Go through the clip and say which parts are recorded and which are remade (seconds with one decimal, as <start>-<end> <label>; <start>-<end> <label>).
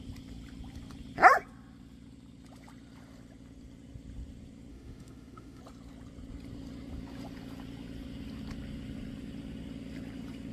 0.0-4.7 recorded; 4.7-5.6 remade; 5.6-10.5 recorded